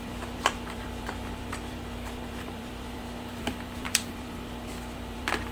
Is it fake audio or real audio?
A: fake